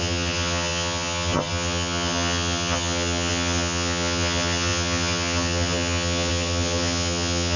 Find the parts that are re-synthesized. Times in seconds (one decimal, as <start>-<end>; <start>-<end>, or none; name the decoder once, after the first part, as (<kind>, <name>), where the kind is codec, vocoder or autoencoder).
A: 0.0-7.6 (vocoder, HiFi-GAN)